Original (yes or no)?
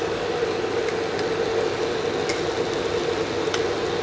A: yes